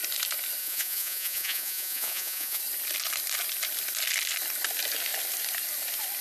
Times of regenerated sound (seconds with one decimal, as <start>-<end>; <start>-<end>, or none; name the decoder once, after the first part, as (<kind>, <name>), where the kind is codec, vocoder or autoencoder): 0.6-2.6 (vocoder, Vocos)